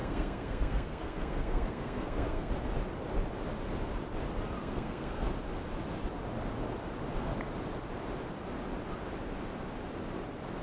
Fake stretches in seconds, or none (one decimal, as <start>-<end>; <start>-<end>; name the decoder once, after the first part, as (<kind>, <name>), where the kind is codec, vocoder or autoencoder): 0.0-2.5 (codec, SNAC); 4.6-5.3